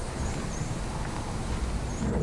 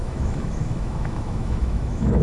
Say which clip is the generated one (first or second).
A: second